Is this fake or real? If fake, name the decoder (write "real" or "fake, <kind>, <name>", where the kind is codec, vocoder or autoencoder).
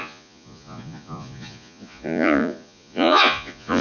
fake, vocoder, Vocos